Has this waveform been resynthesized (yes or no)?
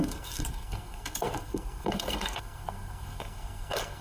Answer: yes